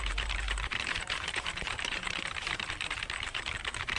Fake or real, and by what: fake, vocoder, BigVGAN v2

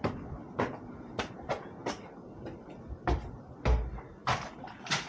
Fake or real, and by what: real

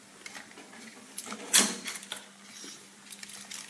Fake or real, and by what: fake, vocoder, BigVGAN v2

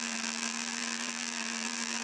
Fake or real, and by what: fake, vocoder, BigVGAN v2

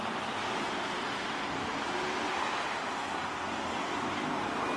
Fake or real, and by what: real